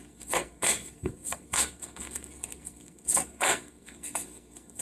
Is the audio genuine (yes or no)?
no